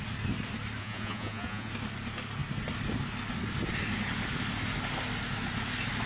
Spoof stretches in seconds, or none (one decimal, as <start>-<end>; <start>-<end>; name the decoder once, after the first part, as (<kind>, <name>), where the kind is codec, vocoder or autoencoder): 0.8-1.7 (vocoder, Vocos)